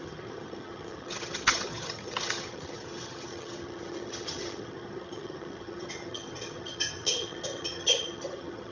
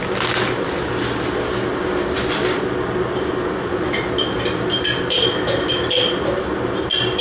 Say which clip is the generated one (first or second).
first